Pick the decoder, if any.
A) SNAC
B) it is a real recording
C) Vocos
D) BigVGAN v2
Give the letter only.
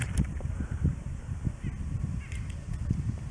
B